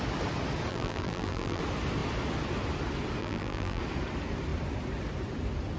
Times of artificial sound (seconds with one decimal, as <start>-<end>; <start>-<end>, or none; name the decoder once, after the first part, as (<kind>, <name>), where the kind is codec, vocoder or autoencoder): 0.7-1.6 (vocoder, BigVGAN v2); 3.2-3.8